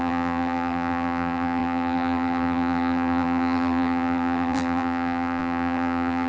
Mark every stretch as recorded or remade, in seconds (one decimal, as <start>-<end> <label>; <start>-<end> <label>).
0.0-6.3 remade

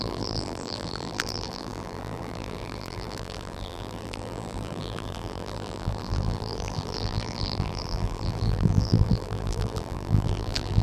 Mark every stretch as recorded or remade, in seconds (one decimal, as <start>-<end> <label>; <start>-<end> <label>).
0.0-10.8 remade

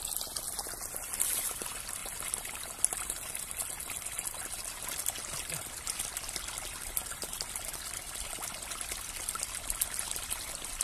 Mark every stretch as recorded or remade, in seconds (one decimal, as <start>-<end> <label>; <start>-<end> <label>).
0.0-10.8 recorded

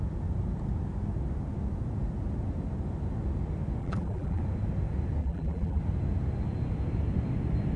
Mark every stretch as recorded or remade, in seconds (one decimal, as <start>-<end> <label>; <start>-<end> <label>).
0.0-3.8 recorded; 3.8-4.4 remade; 4.4-5.2 recorded; 5.2-5.8 remade; 5.8-7.8 recorded

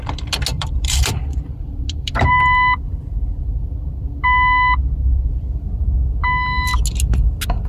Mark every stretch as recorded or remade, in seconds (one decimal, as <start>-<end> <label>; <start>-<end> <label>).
0.0-0.5 recorded; 0.5-2.3 remade; 2.3-7.7 recorded

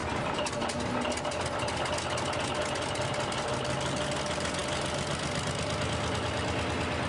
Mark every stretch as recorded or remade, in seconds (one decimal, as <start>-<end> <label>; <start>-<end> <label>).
0.0-7.1 recorded

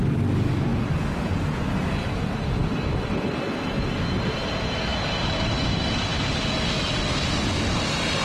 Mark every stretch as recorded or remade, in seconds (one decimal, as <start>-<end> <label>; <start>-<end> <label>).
0.0-8.2 recorded

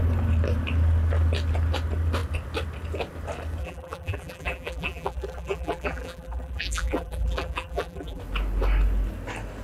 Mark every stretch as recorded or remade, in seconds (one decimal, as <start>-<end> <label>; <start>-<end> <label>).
0.0-3.6 recorded; 3.6-8.2 remade; 8.2-9.6 recorded